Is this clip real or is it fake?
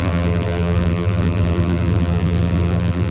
fake